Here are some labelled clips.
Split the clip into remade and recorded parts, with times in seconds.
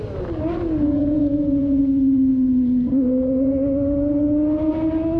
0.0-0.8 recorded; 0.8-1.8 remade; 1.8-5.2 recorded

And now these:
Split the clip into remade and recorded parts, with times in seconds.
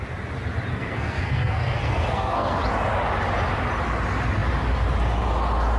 0.0-0.7 recorded; 0.7-2.6 remade; 2.6-5.8 recorded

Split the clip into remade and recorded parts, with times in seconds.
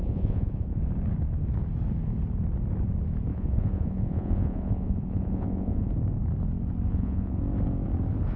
0.0-0.8 remade; 0.8-3.3 recorded; 3.3-5.9 remade; 5.9-6.9 recorded; 6.9-7.4 remade; 7.4-8.4 recorded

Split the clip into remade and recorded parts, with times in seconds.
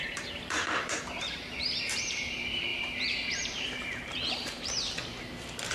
0.0-5.0 remade; 5.0-5.7 recorded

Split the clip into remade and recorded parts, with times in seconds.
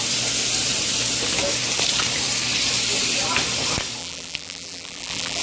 0.0-4.0 recorded; 4.0-5.4 remade